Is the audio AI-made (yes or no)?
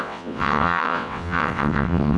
yes